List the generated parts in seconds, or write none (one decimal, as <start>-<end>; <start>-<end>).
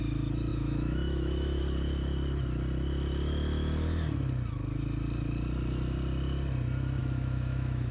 0.5-1.6; 7.0-7.9